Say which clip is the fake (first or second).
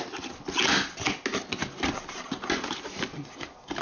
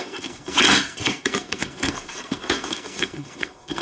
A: second